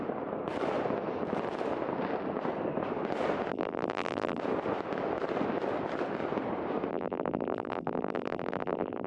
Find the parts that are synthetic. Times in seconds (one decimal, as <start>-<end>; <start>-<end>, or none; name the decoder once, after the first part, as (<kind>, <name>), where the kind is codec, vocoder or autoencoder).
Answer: 3.5-4.4 (vocoder, BigVGAN v2); 6.9-9.1